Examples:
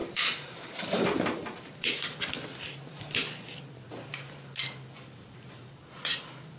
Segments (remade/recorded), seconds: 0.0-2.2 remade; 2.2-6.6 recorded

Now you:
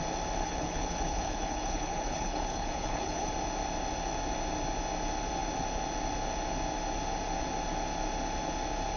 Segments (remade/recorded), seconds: 0.0-0.4 recorded; 0.4-3.3 remade; 3.3-9.0 recorded